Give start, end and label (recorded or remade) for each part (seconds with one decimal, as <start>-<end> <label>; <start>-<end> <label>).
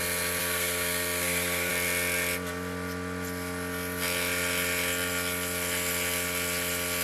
0.0-0.4 recorded; 0.4-1.7 remade; 1.7-7.0 recorded